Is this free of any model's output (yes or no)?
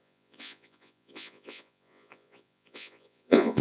no